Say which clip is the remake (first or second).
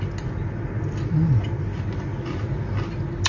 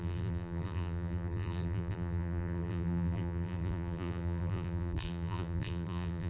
second